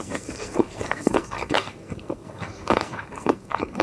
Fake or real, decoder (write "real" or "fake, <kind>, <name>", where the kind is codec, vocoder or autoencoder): fake, codec, SNAC